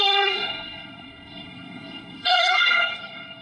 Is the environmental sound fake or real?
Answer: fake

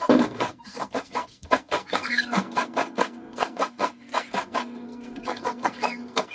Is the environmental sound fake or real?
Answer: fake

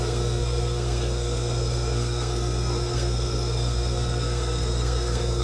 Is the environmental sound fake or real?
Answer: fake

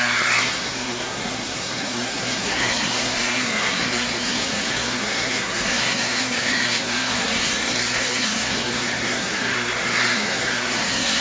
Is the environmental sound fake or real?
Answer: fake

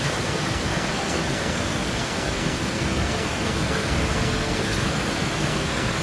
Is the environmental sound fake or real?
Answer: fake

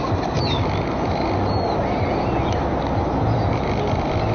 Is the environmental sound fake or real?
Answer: real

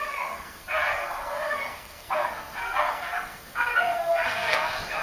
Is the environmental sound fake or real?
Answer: fake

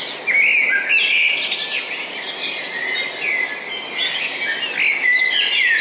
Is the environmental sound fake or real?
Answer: real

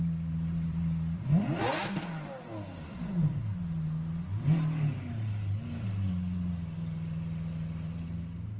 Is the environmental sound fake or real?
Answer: real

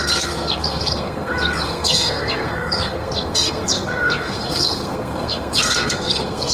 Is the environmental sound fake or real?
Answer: fake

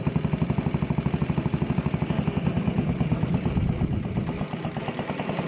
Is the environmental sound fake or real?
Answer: real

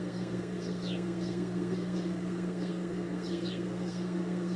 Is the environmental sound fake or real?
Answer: fake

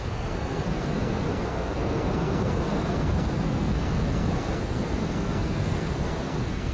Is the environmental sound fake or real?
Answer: fake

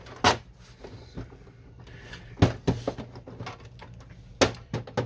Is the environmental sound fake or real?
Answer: real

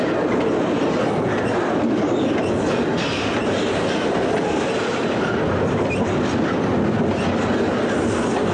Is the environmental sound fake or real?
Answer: real